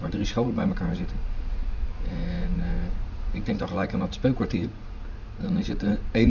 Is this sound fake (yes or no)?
yes